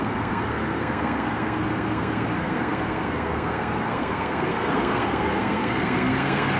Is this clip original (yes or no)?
no